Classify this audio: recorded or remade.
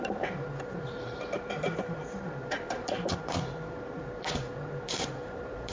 remade